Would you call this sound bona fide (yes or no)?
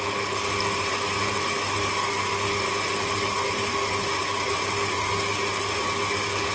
yes